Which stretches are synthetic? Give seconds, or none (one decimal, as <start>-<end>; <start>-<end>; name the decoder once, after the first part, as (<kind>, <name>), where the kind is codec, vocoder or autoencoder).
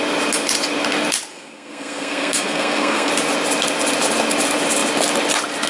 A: 1.3-3.1 (codec, SNAC)